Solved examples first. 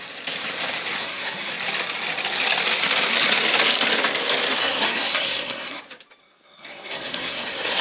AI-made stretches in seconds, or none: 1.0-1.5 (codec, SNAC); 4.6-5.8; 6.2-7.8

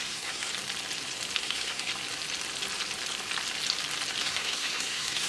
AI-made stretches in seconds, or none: 0.0-0.5 (codec, SNAC); 1.4-1.9; 4.2-5.3

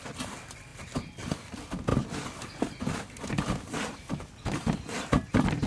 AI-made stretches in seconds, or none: none

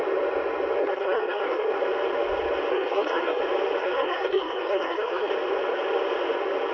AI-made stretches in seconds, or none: 0.8-1.7 (codec, SNAC); 2.7-3.4; 3.8-5.3

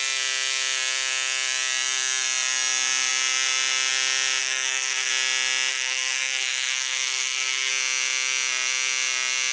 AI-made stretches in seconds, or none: 4.4-5.1 (codec, SNAC); 5.7-7.7

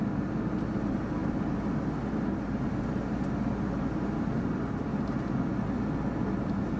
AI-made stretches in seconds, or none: none